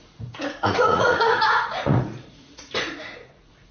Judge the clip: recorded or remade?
remade